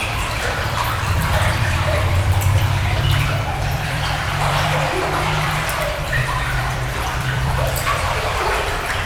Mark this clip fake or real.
fake